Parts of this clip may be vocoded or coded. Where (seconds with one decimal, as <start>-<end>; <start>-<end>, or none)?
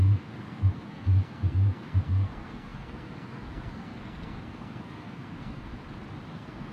0.0-5.7; 6.3-6.7